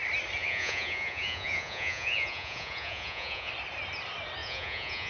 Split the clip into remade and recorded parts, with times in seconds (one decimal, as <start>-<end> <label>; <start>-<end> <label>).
0.0-0.4 recorded; 0.4-3.5 remade; 3.5-4.4 recorded; 4.4-5.1 remade